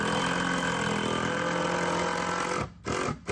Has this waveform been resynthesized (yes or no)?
no